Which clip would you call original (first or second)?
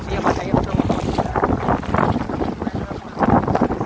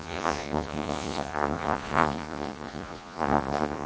first